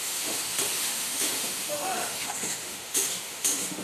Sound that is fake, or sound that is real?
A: fake